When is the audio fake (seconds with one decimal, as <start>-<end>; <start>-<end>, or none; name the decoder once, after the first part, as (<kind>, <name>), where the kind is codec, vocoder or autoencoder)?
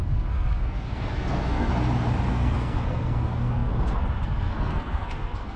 0.0-1.7 (codec, SNAC); 2.3-5.6